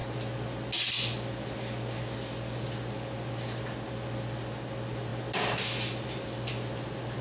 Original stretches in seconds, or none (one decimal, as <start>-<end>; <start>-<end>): 0.0-7.2